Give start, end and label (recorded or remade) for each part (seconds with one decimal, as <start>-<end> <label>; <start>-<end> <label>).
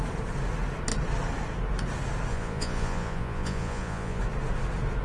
0.0-2.3 recorded; 2.3-4.2 remade; 4.2-5.0 recorded